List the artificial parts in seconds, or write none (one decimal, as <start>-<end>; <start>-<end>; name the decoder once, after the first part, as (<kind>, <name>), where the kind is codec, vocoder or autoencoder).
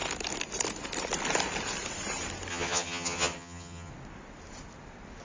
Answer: 2.5-3.9 (vocoder, HiFi-GAN)